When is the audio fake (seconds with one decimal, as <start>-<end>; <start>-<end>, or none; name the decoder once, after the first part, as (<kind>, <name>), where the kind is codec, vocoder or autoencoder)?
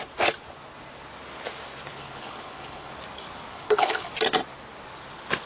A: 1.9-2.9 (codec, HILCodec); 3.5-4.1